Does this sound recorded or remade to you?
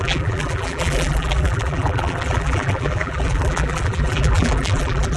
remade